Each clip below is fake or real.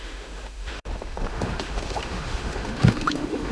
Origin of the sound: fake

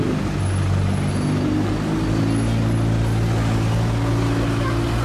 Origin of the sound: real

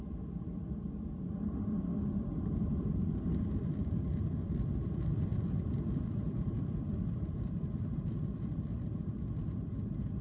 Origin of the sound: fake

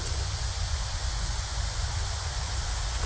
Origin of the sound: fake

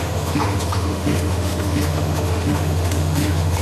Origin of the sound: fake